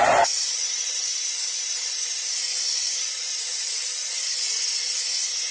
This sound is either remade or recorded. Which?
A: recorded